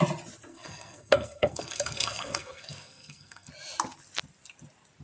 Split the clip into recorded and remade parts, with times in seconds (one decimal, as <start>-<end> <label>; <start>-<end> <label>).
0.0-0.5 recorded; 0.5-3.5 remade; 3.5-5.0 recorded